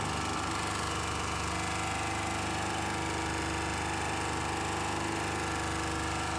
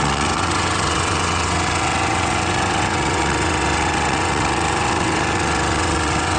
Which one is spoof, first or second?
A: second